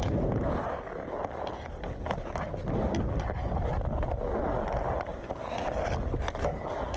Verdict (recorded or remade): recorded